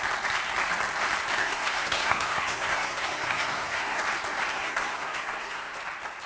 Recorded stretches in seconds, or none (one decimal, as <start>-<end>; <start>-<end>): 0.0-1.4; 4.0-4.5; 5.8-6.3